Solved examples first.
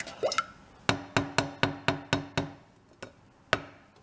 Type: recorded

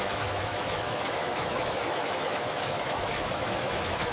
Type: remade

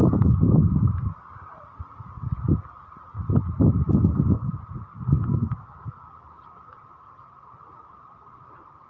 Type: recorded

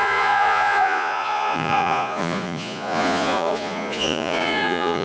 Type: remade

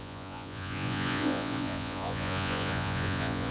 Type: remade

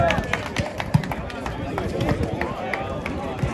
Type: recorded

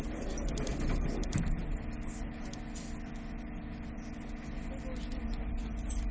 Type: recorded